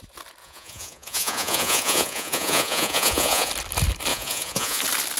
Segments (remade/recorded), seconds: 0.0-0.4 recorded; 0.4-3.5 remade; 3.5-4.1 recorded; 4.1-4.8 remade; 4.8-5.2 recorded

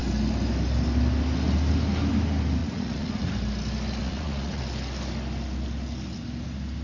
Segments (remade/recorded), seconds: 0.0-2.6 recorded; 2.6-3.3 remade; 3.3-4.0 recorded; 4.0-4.6 remade; 4.6-6.8 recorded

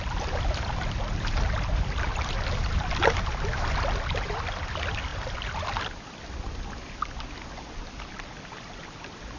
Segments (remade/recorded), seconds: 0.0-9.4 recorded

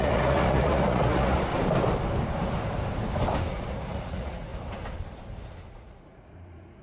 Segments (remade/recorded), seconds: 0.0-1.5 remade; 1.5-3.5 recorded; 3.5-4.5 remade; 4.5-5.7 recorded; 5.7-6.8 remade

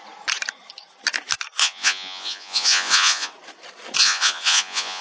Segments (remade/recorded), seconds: 0.0-1.6 recorded; 1.6-3.3 remade; 3.3-4.0 recorded; 4.0-5.0 remade

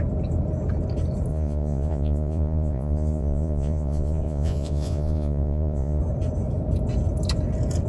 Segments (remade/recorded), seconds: 0.0-1.3 recorded; 1.3-6.0 remade; 6.0-7.9 recorded

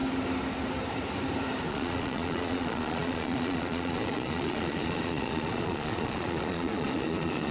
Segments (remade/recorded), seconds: 0.0-1.7 recorded; 1.7-7.5 remade

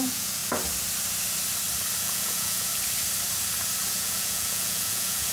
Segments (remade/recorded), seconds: 0.0-0.4 remade; 0.4-2.0 recorded; 2.0-2.7 remade; 2.7-3.9 recorded; 3.9-5.3 remade